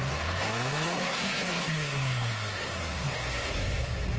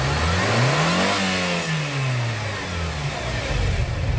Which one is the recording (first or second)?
second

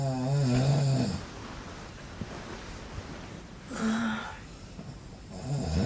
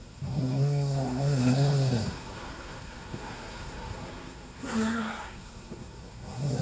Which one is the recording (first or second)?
first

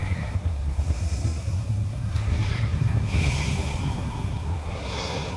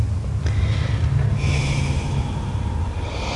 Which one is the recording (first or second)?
second